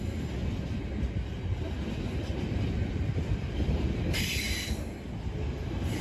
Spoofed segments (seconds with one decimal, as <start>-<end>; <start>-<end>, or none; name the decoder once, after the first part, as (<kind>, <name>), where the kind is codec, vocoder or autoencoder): 0.0-0.4 (vocoder, BigVGAN v2); 2.9-6.0